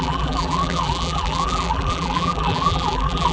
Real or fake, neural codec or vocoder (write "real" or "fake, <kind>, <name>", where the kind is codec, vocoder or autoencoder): fake, vocoder, BigVGAN v2